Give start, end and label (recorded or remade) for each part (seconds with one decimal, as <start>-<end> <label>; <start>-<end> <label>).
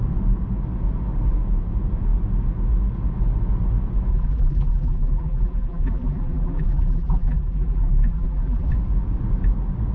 0.0-4.1 recorded; 4.1-8.7 remade; 8.7-9.9 recorded